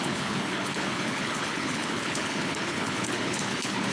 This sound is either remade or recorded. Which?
remade